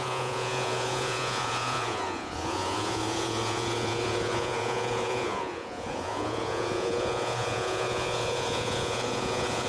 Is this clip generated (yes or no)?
yes